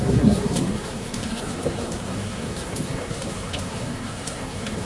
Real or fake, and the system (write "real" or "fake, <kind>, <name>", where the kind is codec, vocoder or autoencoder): fake, codec, SNAC